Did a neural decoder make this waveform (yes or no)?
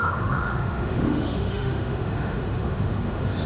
yes